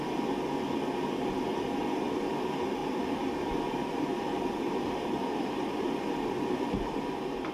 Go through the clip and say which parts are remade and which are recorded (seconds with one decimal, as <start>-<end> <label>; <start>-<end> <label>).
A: 0.0-1.5 recorded; 1.5-2.3 remade; 2.3-2.8 recorded; 2.8-7.5 remade